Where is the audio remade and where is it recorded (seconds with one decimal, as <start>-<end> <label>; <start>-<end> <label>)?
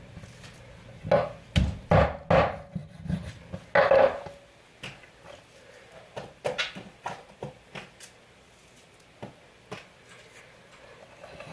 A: 0.0-11.5 recorded